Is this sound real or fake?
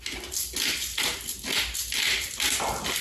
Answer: real